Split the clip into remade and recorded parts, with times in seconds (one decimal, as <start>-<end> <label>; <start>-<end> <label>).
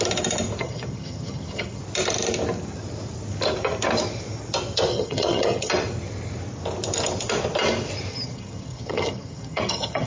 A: 0.0-0.6 recorded; 0.6-1.8 remade; 1.8-4.9 recorded; 4.9-5.7 remade; 5.7-8.1 recorded; 8.1-10.1 remade